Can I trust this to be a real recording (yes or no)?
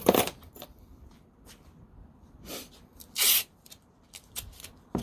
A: no